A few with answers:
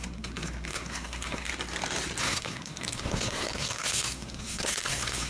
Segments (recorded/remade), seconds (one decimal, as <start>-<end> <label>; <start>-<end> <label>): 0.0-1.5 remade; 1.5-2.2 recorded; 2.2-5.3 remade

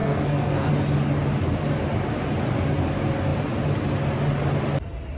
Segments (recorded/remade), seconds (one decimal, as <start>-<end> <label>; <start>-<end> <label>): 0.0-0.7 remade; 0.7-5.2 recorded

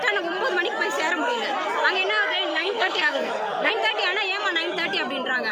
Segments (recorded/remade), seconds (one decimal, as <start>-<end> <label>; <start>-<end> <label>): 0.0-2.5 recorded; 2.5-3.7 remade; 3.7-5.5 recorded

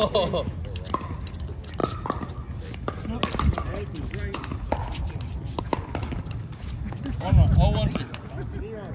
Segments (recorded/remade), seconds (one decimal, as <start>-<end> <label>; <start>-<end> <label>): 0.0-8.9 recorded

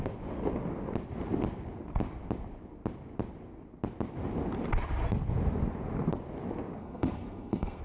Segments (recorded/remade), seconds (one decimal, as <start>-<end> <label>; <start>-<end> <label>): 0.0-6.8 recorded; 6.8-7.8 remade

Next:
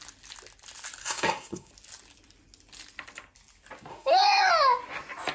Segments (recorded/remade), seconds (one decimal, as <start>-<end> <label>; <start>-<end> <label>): 0.0-1.0 recorded; 1.0-1.7 remade; 1.7-3.9 recorded; 3.9-4.5 remade; 4.5-5.3 recorded